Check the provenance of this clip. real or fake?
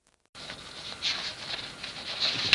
real